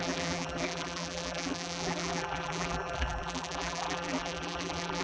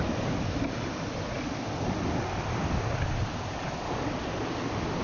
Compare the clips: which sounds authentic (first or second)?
second